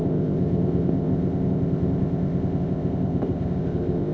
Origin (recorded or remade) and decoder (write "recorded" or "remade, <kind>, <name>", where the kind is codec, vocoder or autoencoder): remade, codec, ZipCodec